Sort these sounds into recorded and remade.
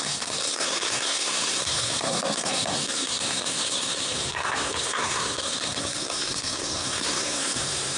remade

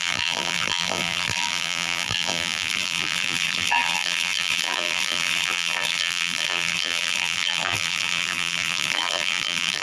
remade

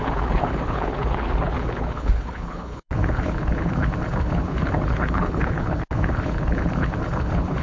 remade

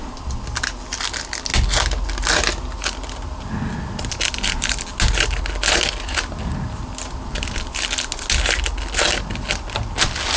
recorded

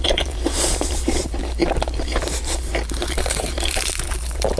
remade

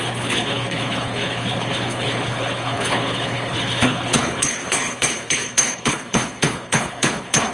remade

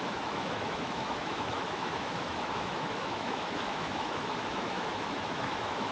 remade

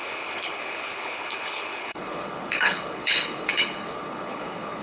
remade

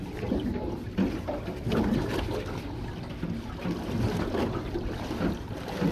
recorded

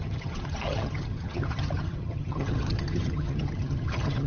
remade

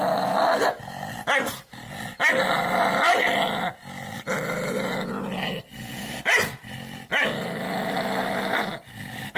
recorded